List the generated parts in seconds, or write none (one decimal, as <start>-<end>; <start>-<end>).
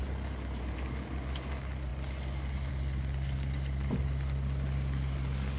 none